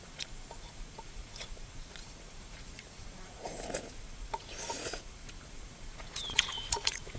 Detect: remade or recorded remade